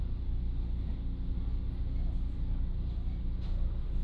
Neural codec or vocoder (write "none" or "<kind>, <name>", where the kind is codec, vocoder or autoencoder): none